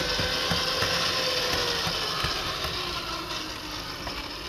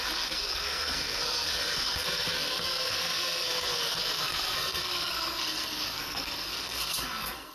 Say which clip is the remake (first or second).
second